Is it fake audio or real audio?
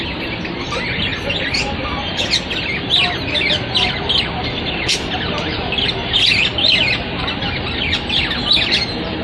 real